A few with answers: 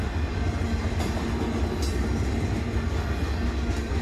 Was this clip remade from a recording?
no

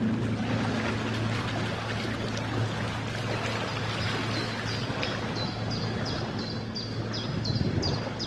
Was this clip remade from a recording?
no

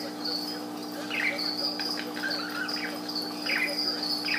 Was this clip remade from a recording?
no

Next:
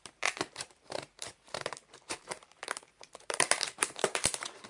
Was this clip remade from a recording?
yes